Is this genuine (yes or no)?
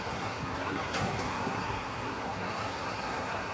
no